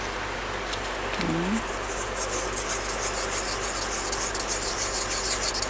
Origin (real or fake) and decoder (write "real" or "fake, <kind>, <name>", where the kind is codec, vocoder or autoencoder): real